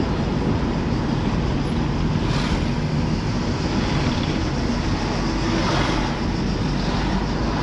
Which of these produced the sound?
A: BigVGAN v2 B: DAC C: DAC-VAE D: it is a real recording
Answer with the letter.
D